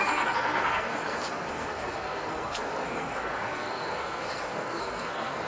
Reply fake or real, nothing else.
fake